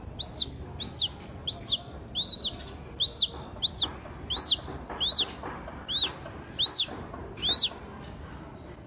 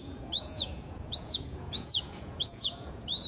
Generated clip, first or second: second